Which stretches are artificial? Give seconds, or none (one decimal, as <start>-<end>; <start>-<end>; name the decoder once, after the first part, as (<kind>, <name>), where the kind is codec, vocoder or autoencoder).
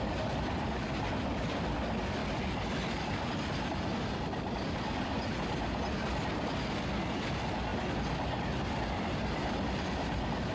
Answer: none